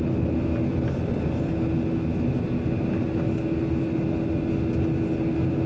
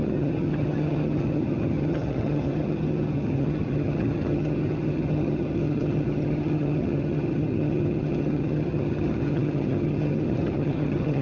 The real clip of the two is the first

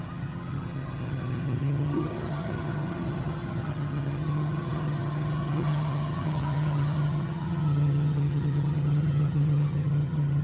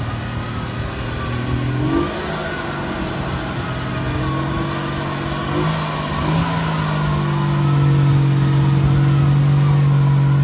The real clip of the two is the second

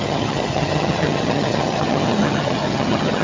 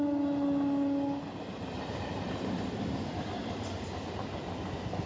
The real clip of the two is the second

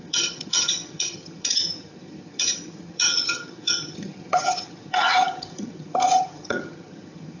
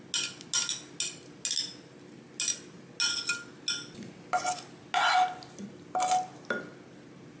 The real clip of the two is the second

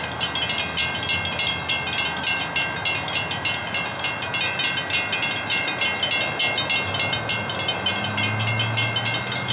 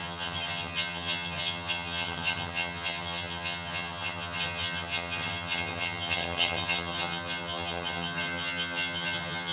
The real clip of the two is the first